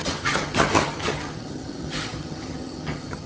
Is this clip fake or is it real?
fake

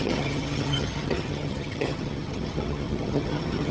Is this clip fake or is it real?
fake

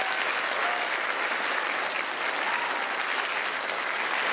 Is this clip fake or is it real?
real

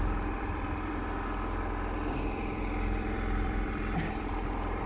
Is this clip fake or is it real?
fake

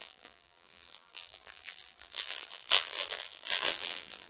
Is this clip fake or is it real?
fake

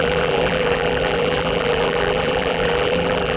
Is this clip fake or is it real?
fake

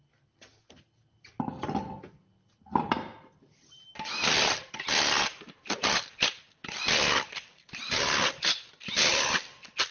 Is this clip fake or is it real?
real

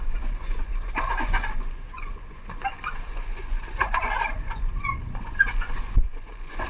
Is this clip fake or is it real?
fake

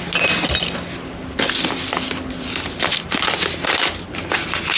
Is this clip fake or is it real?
real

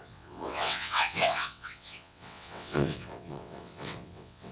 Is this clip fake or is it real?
fake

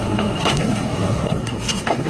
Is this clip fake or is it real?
fake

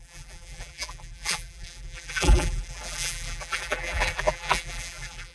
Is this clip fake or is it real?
fake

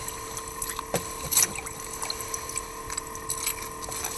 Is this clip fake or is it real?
real